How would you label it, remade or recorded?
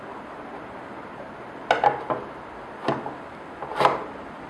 recorded